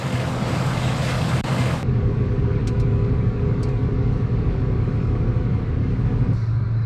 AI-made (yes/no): yes